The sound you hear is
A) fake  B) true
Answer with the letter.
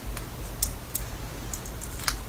B